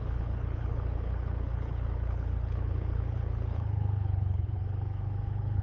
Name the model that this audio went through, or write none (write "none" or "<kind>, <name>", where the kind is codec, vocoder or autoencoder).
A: codec, HILCodec